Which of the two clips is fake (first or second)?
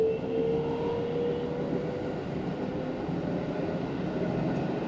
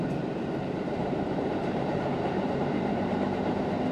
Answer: second